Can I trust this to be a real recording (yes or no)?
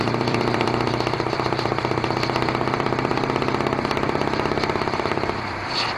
no